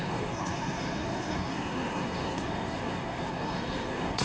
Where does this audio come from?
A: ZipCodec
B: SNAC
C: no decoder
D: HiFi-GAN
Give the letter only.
B